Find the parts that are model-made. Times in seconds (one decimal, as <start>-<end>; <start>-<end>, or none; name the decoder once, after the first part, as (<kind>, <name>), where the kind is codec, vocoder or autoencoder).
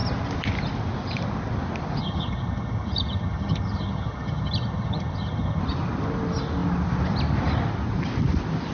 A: 2.0-5.6 (vocoder, HiFi-GAN)